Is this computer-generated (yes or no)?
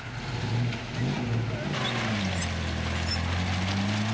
no